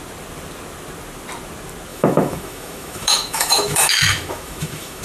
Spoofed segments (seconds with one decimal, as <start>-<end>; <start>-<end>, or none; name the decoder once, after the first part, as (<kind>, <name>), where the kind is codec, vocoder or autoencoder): 1.9-5.0 (autoencoder, DAC-VAE)